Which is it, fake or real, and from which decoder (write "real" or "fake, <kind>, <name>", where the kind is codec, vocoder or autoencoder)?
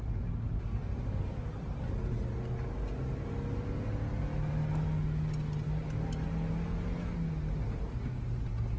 real